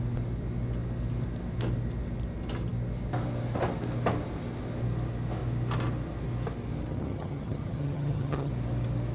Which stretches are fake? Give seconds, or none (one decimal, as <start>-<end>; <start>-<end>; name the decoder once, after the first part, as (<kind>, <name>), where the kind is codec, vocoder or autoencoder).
6.9-8.5 (vocoder, HiFi-GAN)